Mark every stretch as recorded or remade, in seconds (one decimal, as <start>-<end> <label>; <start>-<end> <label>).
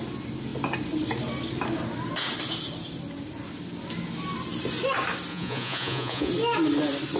0.0-5.3 recorded; 5.3-6.3 remade; 6.3-7.2 recorded